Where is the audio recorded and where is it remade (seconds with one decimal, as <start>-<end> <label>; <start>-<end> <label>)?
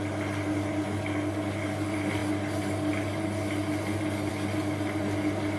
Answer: 0.0-5.6 recorded